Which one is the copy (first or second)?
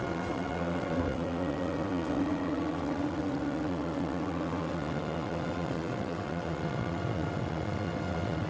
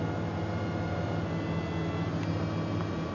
first